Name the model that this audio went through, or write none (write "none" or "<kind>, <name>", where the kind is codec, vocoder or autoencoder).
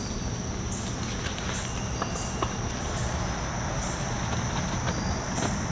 none